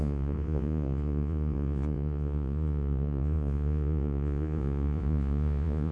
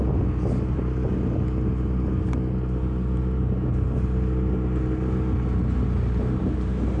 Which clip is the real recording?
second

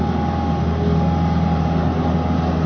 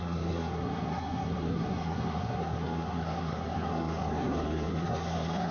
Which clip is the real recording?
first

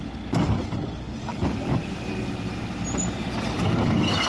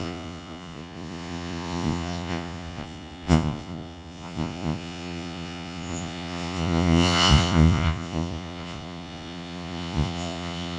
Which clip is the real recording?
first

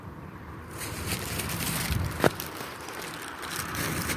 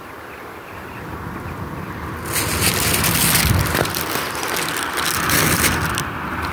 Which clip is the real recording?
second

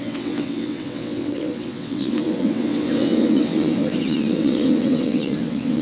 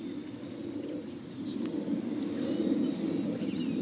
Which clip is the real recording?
second